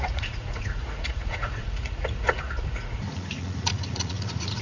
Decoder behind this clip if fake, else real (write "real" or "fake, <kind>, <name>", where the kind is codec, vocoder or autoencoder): fake, vocoder, Vocos